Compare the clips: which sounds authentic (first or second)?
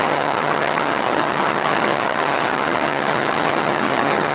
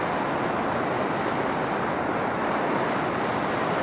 second